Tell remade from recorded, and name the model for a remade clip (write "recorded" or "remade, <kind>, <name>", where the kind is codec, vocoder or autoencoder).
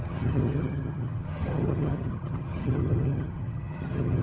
remade, vocoder, HiFi-GAN